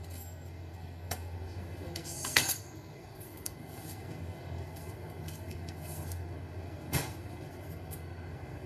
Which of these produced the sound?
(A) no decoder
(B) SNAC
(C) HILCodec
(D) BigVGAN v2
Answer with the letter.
B